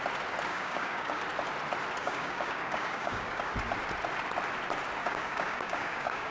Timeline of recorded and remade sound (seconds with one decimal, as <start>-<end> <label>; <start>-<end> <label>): 0.0-0.5 recorded; 0.5-1.2 remade; 1.2-2.0 recorded; 2.0-3.5 remade; 3.5-5.0 recorded; 5.0-6.3 remade